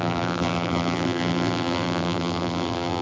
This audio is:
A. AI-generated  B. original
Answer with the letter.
A